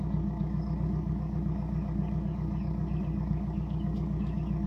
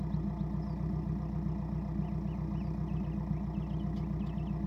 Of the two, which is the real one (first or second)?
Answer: second